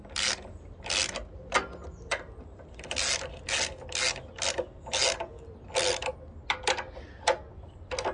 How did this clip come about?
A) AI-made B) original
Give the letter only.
B